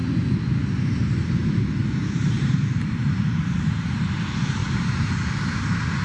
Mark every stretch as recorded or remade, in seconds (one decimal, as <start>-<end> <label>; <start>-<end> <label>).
0.0-1.8 recorded; 1.8-4.0 remade; 4.0-4.6 recorded; 4.6-5.1 remade; 5.1-6.0 recorded